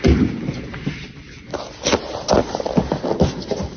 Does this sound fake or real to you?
real